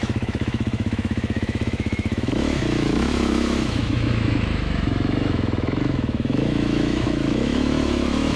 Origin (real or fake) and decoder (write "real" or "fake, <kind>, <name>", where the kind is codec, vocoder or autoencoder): fake, autoencoder, DAC-VAE